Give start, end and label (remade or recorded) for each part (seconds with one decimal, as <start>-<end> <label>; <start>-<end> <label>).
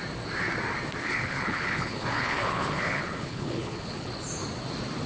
0.0-1.0 recorded; 1.0-4.1 remade; 4.1-5.1 recorded